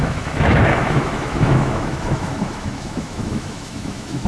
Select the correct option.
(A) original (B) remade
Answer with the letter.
B